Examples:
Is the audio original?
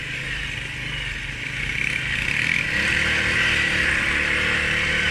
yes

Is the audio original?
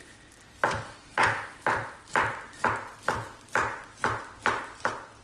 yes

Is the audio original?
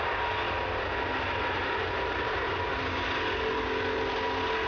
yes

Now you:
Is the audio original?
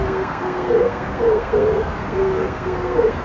no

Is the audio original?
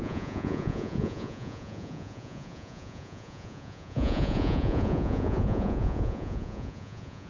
no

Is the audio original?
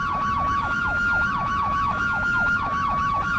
no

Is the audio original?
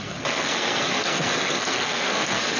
no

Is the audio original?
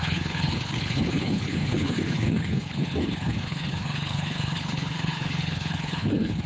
no